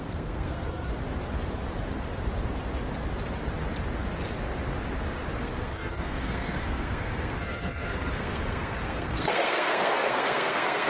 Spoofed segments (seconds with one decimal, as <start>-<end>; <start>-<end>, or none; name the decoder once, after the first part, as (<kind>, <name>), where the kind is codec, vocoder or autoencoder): 0.0-0.9 (codec, SNAC); 5.4-10.9